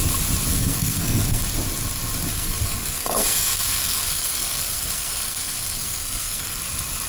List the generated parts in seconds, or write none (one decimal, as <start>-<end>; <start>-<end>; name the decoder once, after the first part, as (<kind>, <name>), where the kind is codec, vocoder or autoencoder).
0.5-1.4 (codec, SNAC); 2.3-6.6